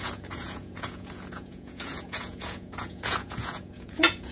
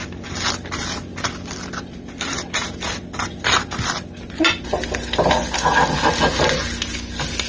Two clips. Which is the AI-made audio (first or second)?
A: first